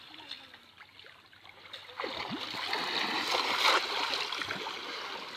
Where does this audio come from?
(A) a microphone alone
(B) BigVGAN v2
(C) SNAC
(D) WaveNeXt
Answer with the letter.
A